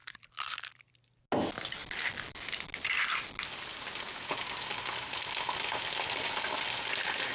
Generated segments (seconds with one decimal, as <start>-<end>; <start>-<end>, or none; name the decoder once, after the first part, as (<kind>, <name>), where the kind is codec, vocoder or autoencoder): 0.0-0.9 (vocoder, BigVGAN v2)